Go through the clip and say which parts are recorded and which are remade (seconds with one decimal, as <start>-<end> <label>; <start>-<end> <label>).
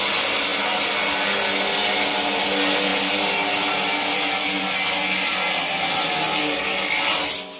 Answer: 0.0-7.6 recorded